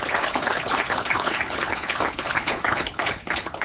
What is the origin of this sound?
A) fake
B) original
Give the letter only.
A